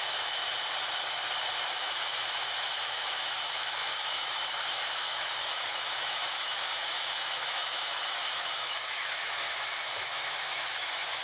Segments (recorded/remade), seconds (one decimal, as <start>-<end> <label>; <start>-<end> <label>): 0.0-0.4 remade; 0.4-1.6 recorded; 1.6-11.2 remade